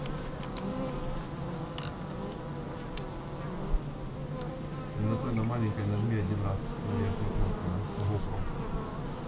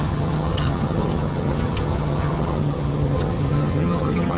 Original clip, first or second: first